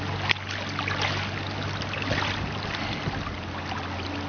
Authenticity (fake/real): real